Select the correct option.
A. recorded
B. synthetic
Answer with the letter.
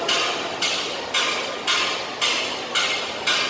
A